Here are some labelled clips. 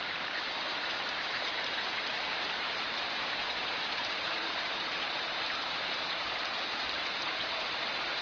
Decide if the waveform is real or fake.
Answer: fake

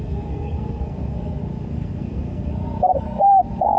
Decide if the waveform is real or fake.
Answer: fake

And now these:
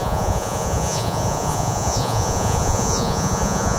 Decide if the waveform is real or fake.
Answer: fake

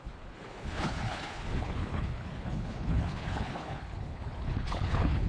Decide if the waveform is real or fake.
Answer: fake